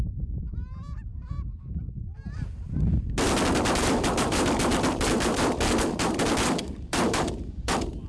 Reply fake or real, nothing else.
fake